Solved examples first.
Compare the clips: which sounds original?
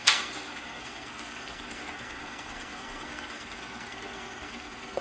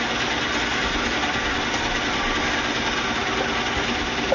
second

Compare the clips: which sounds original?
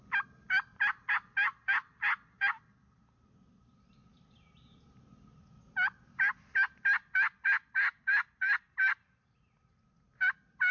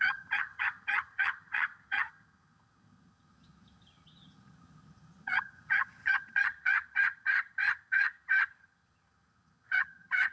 first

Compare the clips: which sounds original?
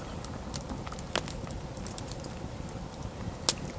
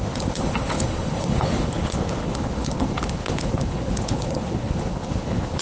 first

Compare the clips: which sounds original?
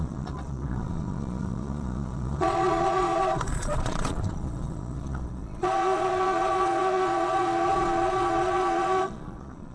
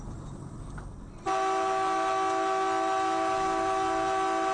second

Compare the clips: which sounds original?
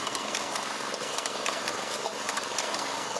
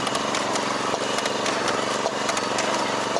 second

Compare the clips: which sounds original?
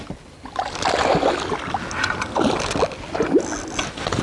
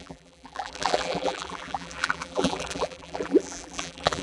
first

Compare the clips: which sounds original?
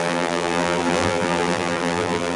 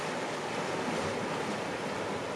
second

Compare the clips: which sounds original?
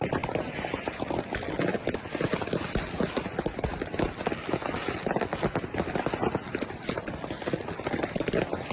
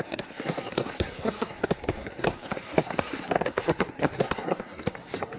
first